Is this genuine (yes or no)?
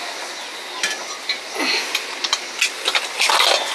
yes